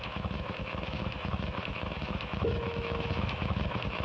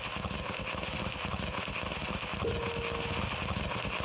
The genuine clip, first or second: second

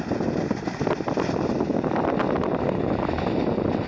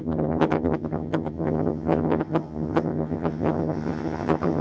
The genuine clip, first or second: first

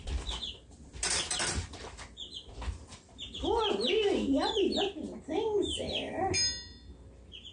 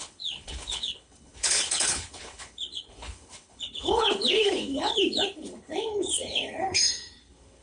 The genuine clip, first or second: first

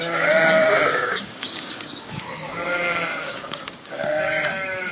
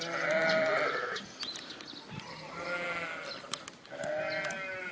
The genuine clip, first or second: second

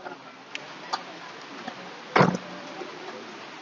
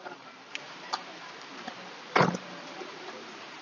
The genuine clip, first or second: first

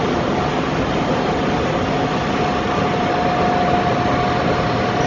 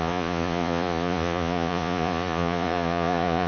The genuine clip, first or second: first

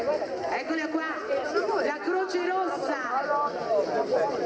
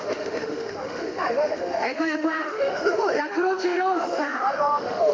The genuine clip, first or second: first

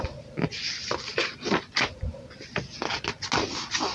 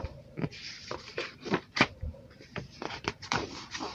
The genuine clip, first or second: first